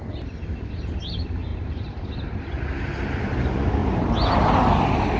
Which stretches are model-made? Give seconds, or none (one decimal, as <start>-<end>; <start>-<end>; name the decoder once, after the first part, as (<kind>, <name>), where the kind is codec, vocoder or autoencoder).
1.5-2.4 (vocoder, BigVGAN v2)